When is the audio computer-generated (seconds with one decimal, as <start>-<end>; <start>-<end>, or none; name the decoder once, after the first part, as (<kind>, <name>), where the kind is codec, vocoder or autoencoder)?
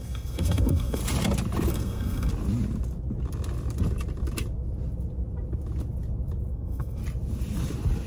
0.0-1.0 (codec, SNAC); 1.7-2.3; 6.5-7.0